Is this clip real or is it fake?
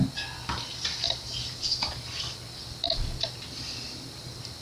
real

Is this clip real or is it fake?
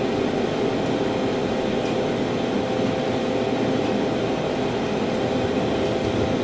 real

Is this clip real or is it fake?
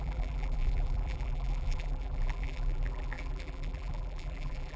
fake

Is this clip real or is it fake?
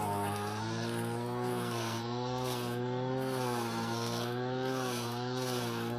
fake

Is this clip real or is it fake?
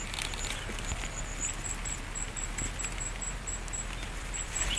real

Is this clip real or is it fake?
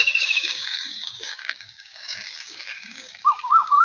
fake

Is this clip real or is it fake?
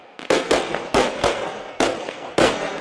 fake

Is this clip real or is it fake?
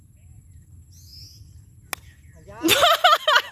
real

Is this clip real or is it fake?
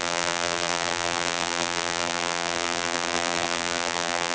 fake